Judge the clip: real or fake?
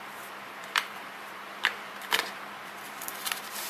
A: fake